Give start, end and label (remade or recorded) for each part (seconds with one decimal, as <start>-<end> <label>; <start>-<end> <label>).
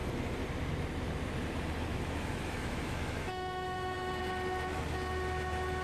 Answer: 0.0-1.9 recorded; 1.9-4.2 remade; 4.2-5.8 recorded